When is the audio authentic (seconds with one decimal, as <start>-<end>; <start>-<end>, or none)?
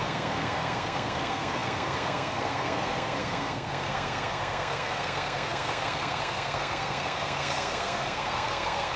none